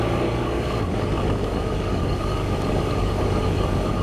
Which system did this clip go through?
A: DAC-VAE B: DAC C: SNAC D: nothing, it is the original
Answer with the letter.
B